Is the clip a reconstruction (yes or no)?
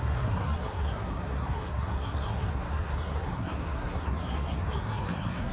yes